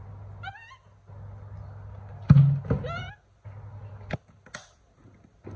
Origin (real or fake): real